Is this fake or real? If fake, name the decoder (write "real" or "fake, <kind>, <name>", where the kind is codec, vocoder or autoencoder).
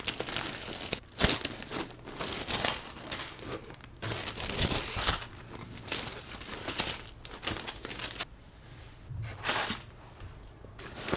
real